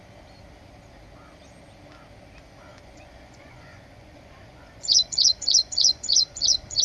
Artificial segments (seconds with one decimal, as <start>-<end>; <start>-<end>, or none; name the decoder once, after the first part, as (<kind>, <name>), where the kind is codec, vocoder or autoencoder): 2.7-6.8 (vocoder, Vocos)